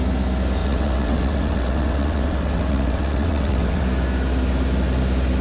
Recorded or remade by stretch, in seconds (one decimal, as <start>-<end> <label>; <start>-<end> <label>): 0.0-0.6 recorded; 0.6-3.8 remade; 3.8-5.4 recorded

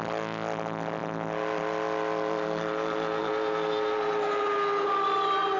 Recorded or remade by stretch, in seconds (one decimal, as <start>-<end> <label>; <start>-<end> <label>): 0.0-5.6 recorded

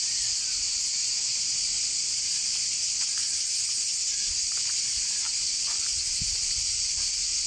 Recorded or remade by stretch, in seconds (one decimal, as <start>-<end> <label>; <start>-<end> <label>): 0.0-4.0 recorded; 4.0-4.5 remade; 4.5-7.5 recorded

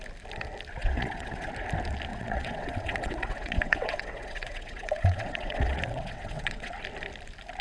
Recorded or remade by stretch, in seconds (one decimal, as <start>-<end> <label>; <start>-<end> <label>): 0.0-0.8 recorded; 0.8-1.5 remade; 1.5-2.1 recorded; 2.1-6.7 remade; 6.7-7.6 recorded

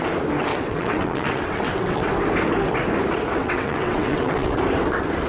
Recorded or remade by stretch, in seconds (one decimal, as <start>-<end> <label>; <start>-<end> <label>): 0.0-0.5 recorded; 0.5-2.1 remade; 2.1-3.4 recorded; 3.4-4.6 remade; 4.6-5.3 recorded